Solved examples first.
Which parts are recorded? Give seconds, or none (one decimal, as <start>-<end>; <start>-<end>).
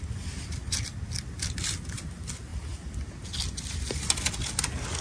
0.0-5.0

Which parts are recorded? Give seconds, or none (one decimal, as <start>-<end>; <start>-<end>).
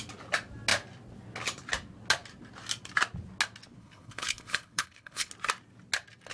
0.0-3.8; 5.3-6.3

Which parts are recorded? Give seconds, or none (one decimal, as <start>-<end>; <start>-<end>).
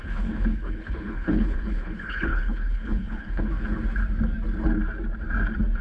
3.5-5.8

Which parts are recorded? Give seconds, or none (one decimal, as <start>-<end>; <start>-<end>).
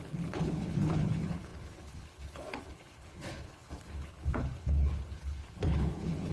none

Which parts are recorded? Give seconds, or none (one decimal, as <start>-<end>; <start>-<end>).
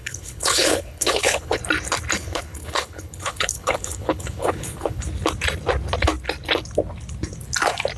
1.6-2.2; 5.0-8.0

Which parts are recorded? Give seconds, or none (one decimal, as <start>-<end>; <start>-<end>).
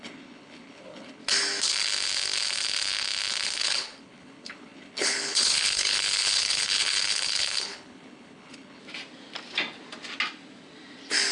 1.2-3.6; 8.8-11.3